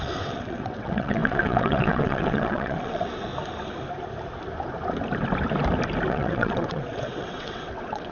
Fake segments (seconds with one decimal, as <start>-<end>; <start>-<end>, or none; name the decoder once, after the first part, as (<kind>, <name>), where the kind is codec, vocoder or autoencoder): 0.0-3.3 (vocoder, WaveNeXt); 6.1-8.1